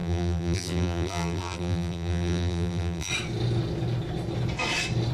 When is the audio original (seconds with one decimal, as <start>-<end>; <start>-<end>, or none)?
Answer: 3.1-5.1